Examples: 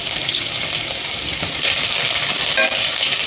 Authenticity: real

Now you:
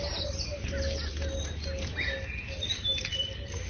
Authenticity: real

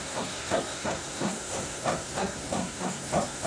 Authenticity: fake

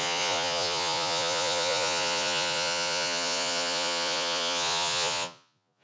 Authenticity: fake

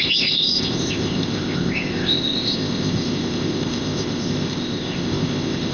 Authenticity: fake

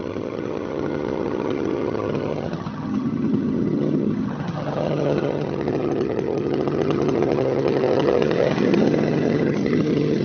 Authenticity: fake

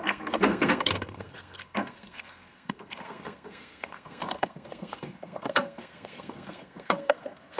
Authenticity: fake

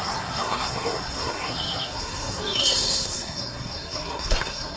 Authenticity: fake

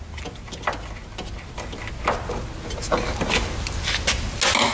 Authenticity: real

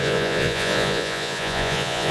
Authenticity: fake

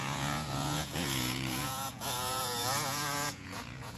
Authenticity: fake